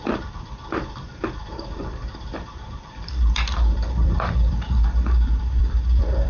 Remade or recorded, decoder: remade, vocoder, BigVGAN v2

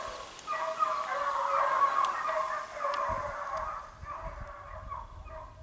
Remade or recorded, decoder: recorded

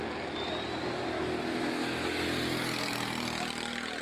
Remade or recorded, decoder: recorded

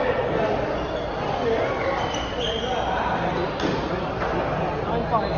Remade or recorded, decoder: recorded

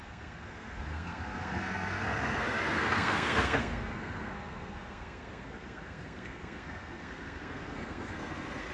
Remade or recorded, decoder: remade, codec, SNAC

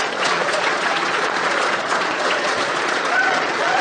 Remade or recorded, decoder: remade, vocoder, Vocos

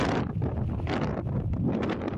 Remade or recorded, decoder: recorded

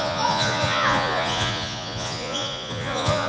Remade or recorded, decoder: remade, vocoder, Vocos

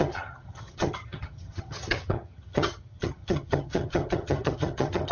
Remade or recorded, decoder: remade, vocoder, HiFi-GAN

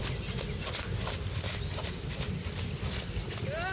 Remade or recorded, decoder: recorded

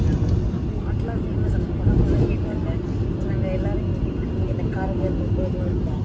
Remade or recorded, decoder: recorded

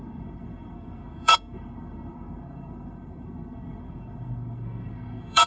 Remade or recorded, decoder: remade, codec, SNAC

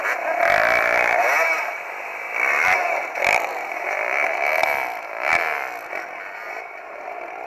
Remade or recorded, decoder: recorded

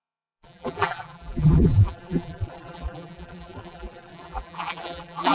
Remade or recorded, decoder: remade, vocoder, BigVGAN v2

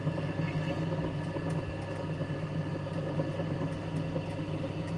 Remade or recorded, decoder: recorded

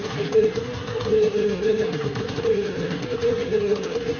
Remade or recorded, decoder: remade, codec, SNAC